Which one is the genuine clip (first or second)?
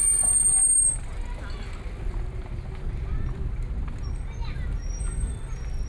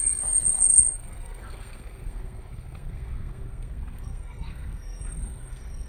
first